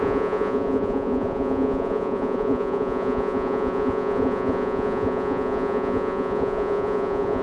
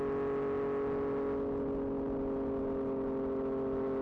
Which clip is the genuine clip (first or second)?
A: second